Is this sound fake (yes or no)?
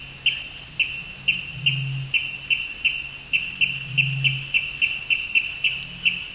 no